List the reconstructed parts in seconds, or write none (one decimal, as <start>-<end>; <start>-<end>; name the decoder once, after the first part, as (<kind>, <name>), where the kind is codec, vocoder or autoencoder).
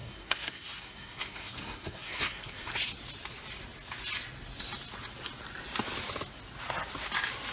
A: 0.0-2.7 (codec, SNAC)